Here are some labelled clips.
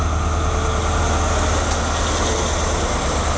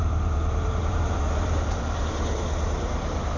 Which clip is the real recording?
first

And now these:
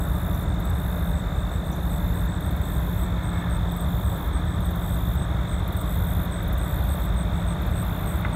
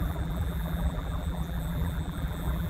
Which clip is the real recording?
first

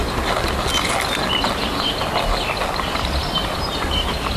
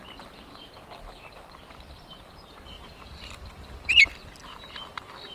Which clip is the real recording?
first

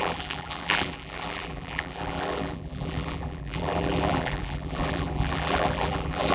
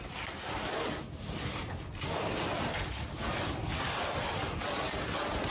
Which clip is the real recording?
second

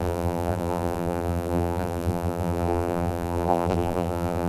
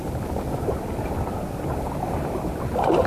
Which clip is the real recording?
second